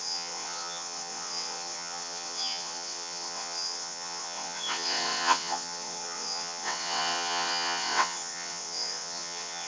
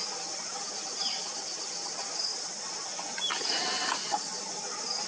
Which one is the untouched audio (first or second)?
second